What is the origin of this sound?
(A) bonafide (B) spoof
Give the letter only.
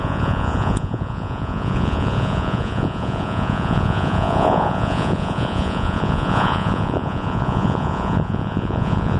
B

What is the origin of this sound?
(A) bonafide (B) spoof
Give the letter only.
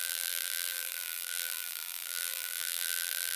B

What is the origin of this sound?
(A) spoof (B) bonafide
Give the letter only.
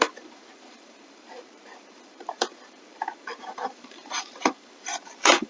A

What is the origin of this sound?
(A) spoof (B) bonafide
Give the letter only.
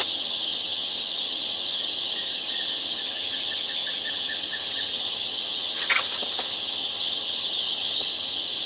A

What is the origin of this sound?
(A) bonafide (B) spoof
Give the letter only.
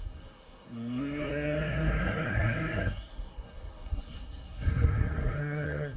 B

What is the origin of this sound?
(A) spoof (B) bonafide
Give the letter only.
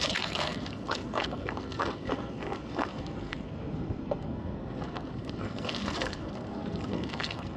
A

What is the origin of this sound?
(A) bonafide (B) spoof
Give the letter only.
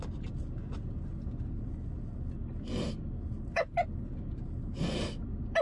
A